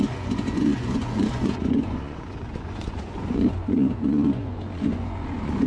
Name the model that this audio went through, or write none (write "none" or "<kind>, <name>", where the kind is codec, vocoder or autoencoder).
vocoder, Vocos